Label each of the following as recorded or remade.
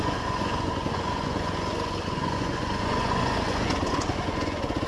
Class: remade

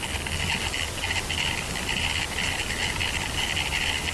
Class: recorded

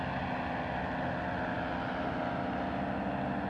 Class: recorded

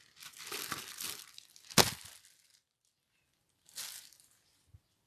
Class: recorded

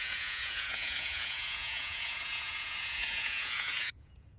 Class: remade